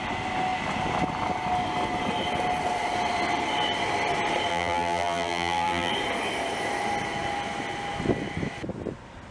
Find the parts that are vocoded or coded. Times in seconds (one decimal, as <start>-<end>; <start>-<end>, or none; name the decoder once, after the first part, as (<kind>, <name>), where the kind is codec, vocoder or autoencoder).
4.5-5.9 (vocoder, BigVGAN v2)

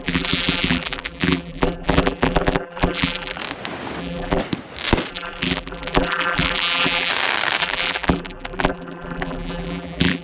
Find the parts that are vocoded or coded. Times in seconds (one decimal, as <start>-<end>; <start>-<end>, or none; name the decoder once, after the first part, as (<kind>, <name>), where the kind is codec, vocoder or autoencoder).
0.0-3.4 (vocoder, BigVGAN v2); 4.0-4.4; 5.1-7.1; 7.6-10.2